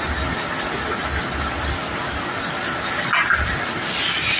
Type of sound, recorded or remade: recorded